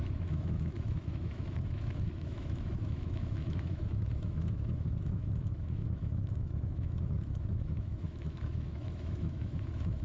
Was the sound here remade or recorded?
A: remade